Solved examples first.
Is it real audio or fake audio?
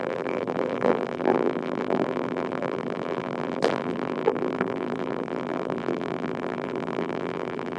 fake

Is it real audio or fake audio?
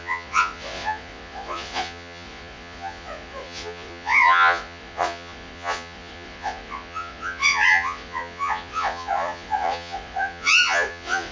fake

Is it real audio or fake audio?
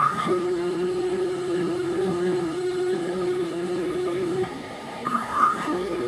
fake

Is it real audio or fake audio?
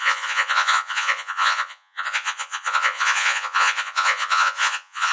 fake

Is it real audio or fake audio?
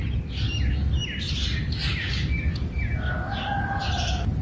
real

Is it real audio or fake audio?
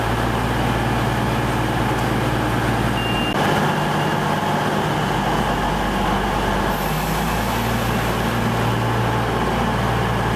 real